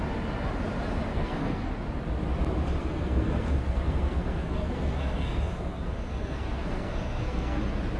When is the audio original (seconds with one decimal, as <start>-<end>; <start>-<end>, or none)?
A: 0.0-1.1; 1.7-2.8; 7.6-8.0